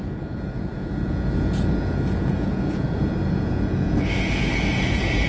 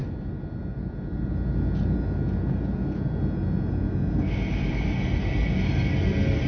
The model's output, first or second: first